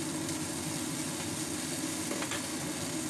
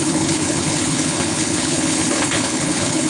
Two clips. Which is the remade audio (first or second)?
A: second